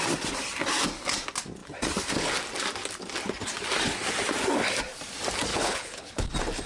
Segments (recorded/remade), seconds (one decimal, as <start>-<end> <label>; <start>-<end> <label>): 0.0-5.5 recorded; 5.5-6.3 remade; 6.3-6.7 recorded